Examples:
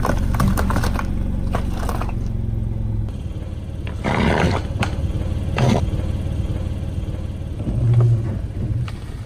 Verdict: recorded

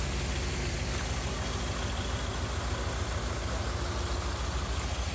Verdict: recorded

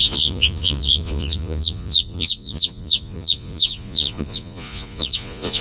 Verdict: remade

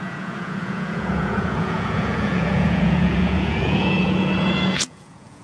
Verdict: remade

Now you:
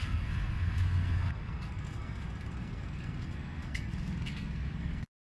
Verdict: remade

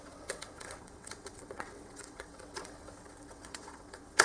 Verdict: remade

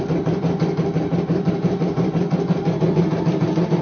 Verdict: remade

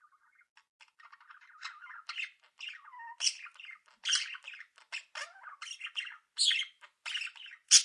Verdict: recorded